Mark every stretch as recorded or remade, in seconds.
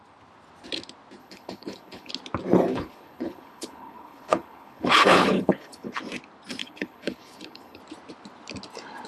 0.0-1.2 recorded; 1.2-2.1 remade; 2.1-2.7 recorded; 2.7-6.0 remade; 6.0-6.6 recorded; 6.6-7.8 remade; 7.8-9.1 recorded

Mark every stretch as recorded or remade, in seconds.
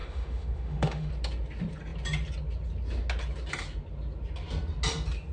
0.0-1.1 remade; 1.1-5.3 recorded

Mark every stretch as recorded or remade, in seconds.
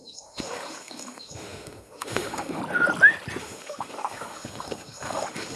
0.0-2.6 remade; 2.6-3.4 recorded; 3.4-5.6 remade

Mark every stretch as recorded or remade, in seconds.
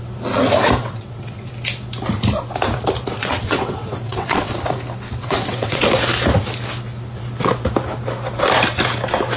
0.0-0.8 recorded; 0.8-1.5 remade; 1.5-3.2 recorded; 3.2-4.5 remade; 4.5-5.2 recorded; 5.2-5.8 remade; 5.8-9.4 recorded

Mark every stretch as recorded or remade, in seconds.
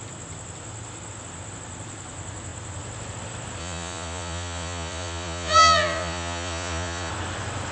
0.0-3.6 recorded; 3.6-7.1 remade; 7.1-7.7 recorded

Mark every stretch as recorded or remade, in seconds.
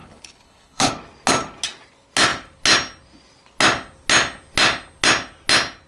0.0-0.9 remade; 0.9-5.9 recorded